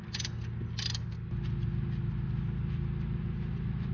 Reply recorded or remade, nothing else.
recorded